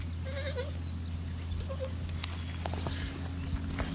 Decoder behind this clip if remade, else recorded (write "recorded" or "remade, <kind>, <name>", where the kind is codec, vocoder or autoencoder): recorded